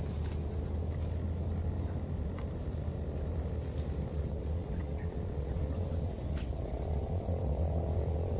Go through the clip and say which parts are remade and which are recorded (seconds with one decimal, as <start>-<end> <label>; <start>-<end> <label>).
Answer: 0.0-4.1 recorded; 4.1-8.4 remade